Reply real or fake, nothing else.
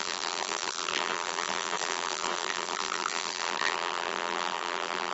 fake